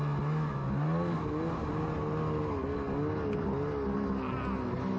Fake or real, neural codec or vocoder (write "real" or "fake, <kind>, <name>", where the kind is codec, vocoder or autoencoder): real